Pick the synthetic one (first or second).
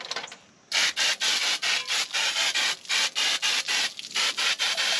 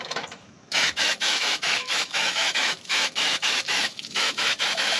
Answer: second